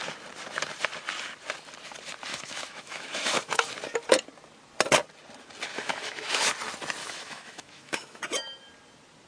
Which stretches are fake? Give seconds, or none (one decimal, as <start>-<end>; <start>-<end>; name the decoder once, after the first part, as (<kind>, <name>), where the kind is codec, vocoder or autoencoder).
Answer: 2.3-3.7 (autoencoder, DAC-VAE); 5.7-6.5; 7.0-8.2